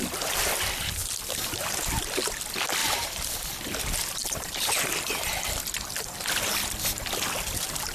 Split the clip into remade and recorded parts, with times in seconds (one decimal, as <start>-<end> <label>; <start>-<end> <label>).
0.0-2.8 recorded; 2.8-3.6 remade; 3.6-4.2 recorded; 4.2-6.1 remade; 6.1-7.9 recorded